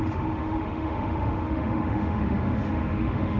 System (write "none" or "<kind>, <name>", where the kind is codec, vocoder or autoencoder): autoencoder, DAC-VAE